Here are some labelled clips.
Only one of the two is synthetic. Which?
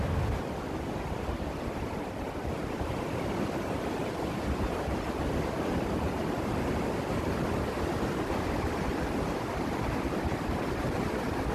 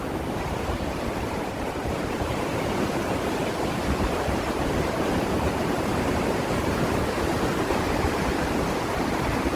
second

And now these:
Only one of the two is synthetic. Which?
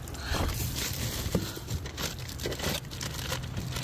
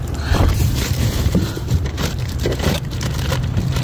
second